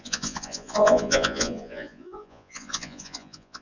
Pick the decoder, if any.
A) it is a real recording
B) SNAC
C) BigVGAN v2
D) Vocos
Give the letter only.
D